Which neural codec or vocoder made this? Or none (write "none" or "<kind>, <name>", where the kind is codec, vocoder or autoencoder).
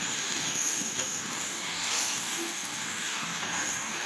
codec, DAC